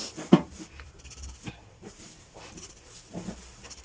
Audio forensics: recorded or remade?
remade